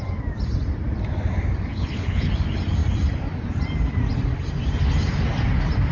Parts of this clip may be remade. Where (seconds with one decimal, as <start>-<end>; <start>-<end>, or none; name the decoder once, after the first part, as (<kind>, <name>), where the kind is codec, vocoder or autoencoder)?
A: 1.7-2.3 (codec, HILCodec)